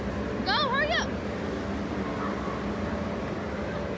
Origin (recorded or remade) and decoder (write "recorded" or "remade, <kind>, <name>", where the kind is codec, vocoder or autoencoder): recorded